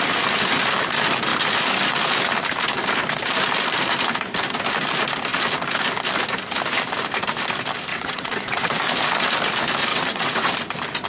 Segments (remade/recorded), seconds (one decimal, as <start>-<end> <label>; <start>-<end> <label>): 0.0-7.9 recorded; 7.9-8.8 remade; 8.8-9.9 recorded; 9.9-10.5 remade; 10.5-11.1 recorded